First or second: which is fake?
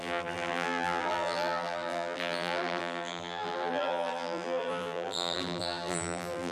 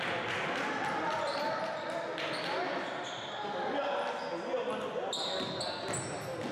first